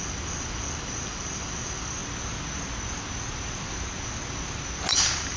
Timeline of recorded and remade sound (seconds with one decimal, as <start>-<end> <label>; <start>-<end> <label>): 0.0-2.0 remade; 2.0-4.9 recorded; 4.9-5.4 remade